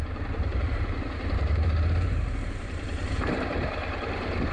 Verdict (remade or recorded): remade